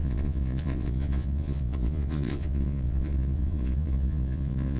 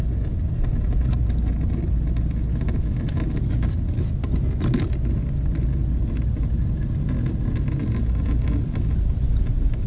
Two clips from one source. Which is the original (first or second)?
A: second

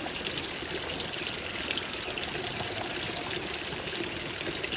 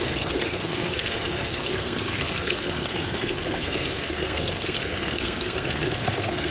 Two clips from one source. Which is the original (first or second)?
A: first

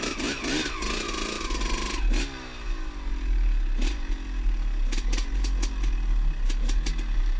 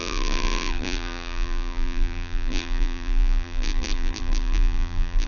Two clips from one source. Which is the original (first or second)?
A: first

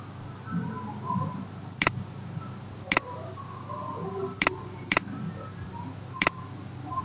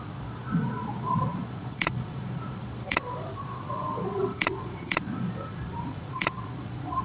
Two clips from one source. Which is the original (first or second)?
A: first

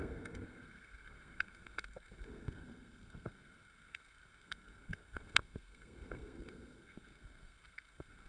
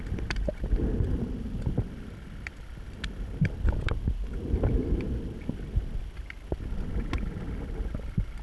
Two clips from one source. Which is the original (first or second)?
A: second